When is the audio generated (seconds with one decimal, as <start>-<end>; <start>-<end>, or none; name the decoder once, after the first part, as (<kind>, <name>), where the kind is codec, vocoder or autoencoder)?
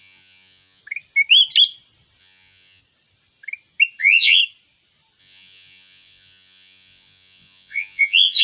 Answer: 0.0-0.8 (vocoder, Vocos); 2.2-2.8; 4.0-4.4; 5.2-8.4